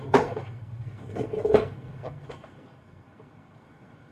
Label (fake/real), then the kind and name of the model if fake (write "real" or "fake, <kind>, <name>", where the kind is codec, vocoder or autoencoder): fake, codec, SNAC